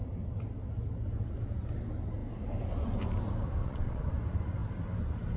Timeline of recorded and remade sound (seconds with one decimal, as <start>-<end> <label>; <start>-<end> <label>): 0.0-3.6 recorded; 3.6-4.1 remade; 4.1-5.4 recorded